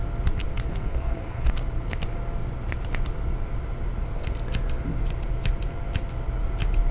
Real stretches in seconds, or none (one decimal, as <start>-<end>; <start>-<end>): 0.0-0.7; 1.5-6.9